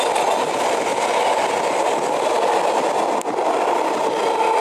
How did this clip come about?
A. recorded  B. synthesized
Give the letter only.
A